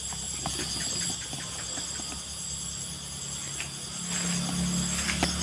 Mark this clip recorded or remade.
recorded